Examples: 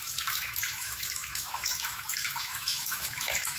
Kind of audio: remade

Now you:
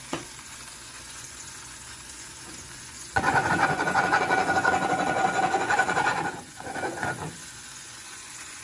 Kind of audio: remade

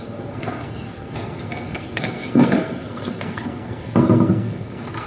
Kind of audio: remade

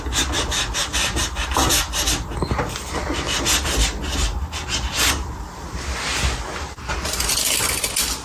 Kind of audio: recorded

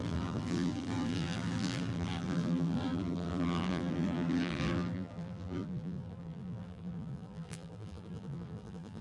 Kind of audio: remade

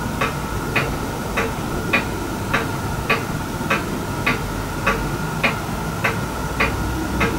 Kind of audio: recorded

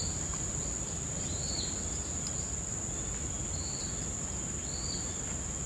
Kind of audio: recorded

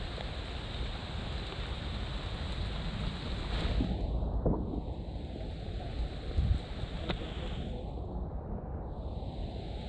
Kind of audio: recorded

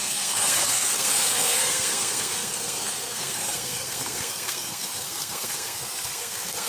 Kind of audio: remade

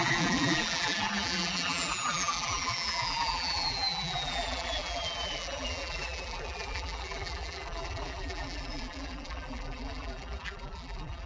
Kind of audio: remade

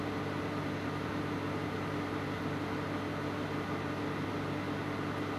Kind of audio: recorded